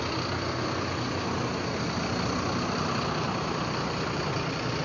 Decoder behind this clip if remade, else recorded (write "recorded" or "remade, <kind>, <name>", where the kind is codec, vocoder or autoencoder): recorded